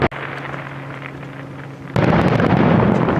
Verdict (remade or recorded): recorded